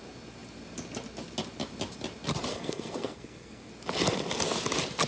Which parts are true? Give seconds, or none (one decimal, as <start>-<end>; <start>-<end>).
0.0-2.5; 3.7-5.1